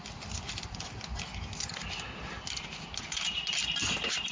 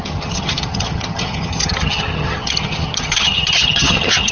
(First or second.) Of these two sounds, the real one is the first